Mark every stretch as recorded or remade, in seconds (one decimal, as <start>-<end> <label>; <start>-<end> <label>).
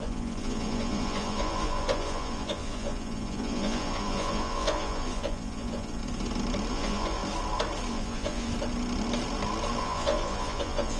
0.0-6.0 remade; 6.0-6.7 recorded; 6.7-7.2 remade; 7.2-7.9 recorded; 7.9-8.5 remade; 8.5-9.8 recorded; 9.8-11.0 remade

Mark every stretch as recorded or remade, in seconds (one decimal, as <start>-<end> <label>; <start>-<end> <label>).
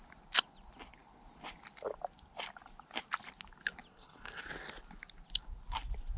0.0-3.9 recorded; 3.9-4.4 remade; 4.4-6.2 recorded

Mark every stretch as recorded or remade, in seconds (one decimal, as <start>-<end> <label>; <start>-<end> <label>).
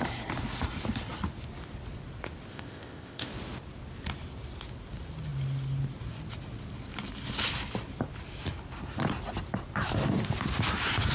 0.0-2.5 recorded; 2.5-3.3 remade; 3.3-11.1 recorded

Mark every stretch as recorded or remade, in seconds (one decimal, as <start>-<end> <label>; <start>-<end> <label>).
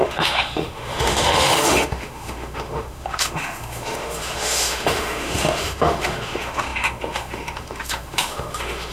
0.0-8.9 remade